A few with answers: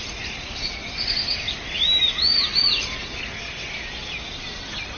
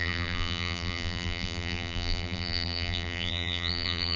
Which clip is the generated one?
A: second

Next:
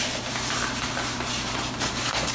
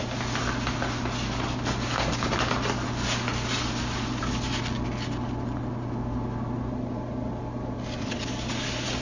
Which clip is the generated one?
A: first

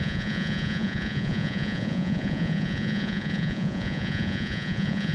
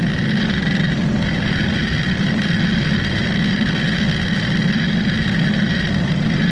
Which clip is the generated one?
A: first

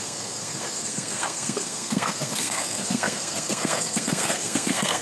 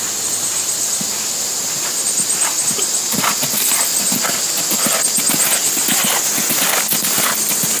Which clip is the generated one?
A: first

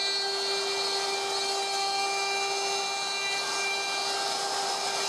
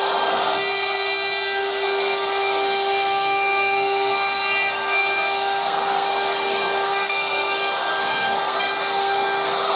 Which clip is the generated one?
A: second